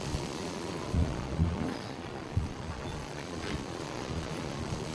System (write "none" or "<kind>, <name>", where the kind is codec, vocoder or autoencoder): vocoder, Vocos